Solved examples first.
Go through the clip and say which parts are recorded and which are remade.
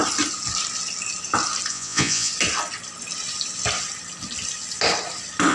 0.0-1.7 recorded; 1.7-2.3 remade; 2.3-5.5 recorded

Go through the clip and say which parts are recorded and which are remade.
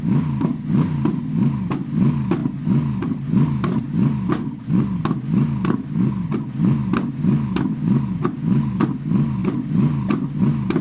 0.0-10.8 recorded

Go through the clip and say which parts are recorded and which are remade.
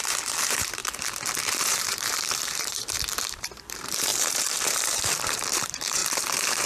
0.0-0.8 remade; 0.8-1.4 recorded; 1.4-6.7 remade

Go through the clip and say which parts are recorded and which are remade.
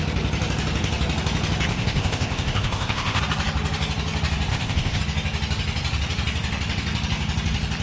0.0-1.7 recorded; 1.7-3.2 remade; 3.2-4.5 recorded; 4.5-5.0 remade; 5.0-7.8 recorded